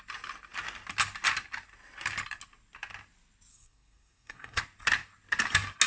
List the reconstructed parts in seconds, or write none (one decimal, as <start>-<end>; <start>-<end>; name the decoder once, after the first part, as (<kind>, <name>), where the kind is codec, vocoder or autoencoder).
3.5-4.6 (codec, SNAC)

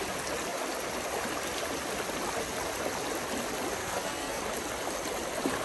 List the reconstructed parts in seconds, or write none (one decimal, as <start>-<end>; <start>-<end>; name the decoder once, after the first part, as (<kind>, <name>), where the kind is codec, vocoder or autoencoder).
3.8-4.4 (codec, SNAC)

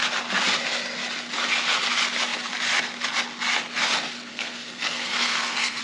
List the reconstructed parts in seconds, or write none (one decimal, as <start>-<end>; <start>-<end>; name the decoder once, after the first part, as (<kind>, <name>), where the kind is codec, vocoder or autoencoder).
4.3-5.8 (codec, SNAC)

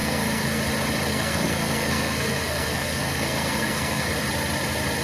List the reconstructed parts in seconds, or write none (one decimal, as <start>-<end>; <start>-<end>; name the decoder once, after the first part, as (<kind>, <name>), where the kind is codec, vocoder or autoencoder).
0.0-0.6 (codec, SNAC); 1.1-4.1

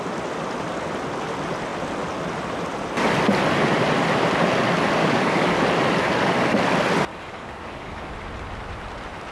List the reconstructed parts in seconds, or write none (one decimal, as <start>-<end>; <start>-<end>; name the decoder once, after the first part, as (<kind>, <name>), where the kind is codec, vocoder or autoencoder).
5.0-5.6 (codec, DAC); 7.1-8.1

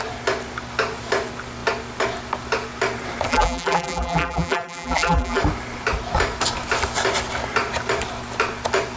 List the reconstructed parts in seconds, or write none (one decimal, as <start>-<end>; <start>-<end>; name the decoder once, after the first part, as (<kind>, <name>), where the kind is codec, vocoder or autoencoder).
3.3-5.4 (vocoder, BigVGAN v2)

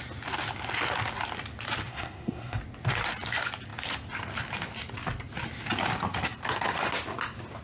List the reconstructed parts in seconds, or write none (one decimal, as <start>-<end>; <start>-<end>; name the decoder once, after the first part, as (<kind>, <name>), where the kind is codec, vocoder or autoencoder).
1.9-2.6 (codec, SNAC)